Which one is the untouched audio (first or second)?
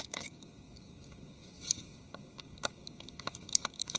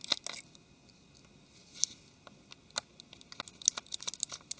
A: second